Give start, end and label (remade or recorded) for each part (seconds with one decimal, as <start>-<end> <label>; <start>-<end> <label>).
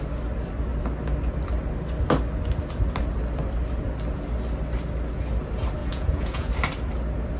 0.0-5.8 recorded; 5.8-6.5 remade; 6.5-7.4 recorded